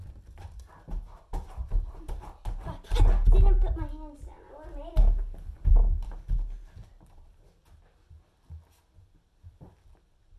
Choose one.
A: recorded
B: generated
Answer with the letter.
A